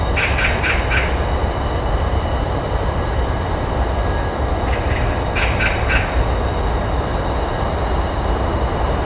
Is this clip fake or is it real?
real